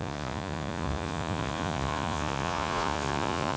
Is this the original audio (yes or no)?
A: no